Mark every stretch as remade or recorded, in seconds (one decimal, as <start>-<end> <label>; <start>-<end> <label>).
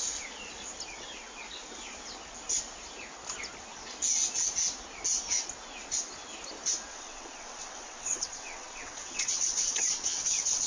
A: 0.0-6.9 recorded; 6.9-10.7 remade